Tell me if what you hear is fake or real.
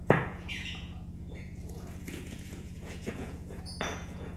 fake